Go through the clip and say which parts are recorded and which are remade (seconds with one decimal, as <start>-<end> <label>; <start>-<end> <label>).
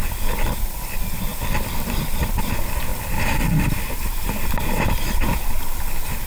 0.0-6.3 recorded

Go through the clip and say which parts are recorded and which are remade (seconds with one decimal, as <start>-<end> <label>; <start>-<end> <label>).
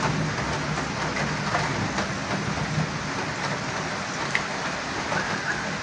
0.0-5.8 recorded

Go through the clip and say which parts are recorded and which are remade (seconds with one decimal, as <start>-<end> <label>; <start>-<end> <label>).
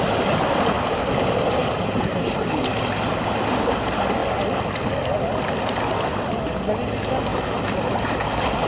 0.0-1.6 recorded; 1.6-3.0 remade; 3.0-7.3 recorded; 7.3-8.0 remade; 8.0-8.7 recorded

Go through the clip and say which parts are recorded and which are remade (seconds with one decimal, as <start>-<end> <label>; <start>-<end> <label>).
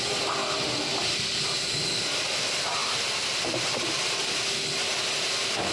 0.0-5.7 recorded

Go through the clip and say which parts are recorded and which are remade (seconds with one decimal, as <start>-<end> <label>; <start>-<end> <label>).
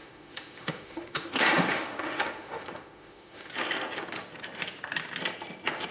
0.0-3.5 remade; 3.5-5.9 recorded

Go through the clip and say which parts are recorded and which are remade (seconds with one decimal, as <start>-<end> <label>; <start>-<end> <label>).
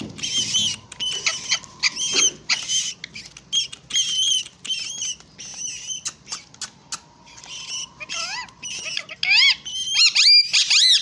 0.0-11.0 recorded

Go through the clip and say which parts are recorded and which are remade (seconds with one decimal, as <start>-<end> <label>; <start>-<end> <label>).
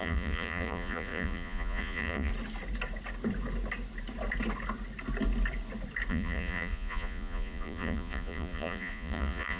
0.0-2.3 remade; 2.3-6.1 recorded; 6.1-9.6 remade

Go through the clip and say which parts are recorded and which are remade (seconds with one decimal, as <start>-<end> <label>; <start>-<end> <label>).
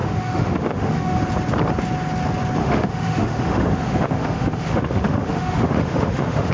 0.0-1.2 remade; 1.2-2.6 recorded; 2.6-6.5 remade